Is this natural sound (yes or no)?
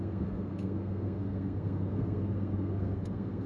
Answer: no